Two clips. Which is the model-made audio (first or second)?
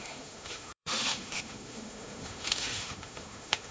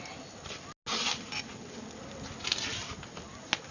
first